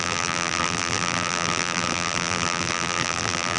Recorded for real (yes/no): no